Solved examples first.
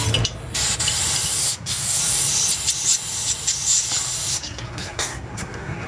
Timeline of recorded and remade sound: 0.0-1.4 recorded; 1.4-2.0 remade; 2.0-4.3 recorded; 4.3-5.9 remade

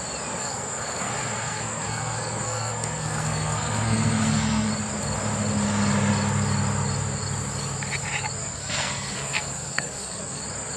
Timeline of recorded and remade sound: 0.0-0.4 recorded; 0.4-4.7 remade; 4.7-8.4 recorded; 8.4-10.4 remade; 10.4-10.8 recorded

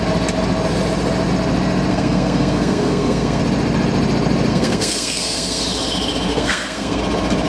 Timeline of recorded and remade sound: 0.0-1.9 recorded; 1.9-3.4 remade; 3.4-4.5 recorded; 4.5-5.6 remade; 5.6-6.3 recorded; 6.3-7.0 remade; 7.0-7.5 recorded